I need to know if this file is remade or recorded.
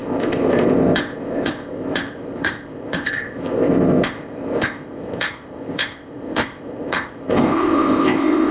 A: remade